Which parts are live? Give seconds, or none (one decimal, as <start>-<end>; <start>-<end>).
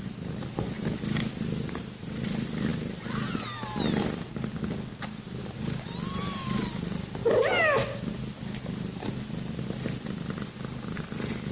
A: 0.0-11.5